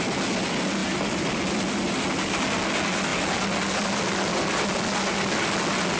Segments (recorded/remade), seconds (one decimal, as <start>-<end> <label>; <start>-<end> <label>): 0.0-6.0 recorded